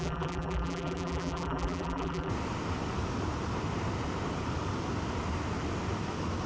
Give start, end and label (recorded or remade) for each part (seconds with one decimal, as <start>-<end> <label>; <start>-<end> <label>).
0.0-2.3 remade; 2.3-6.5 recorded